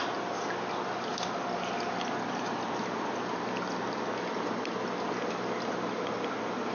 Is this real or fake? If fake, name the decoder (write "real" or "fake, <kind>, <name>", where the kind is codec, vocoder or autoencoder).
real